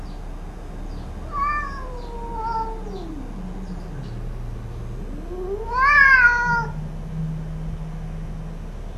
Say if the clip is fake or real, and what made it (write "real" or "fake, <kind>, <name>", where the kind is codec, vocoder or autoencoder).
real